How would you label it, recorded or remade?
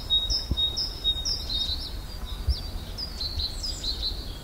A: recorded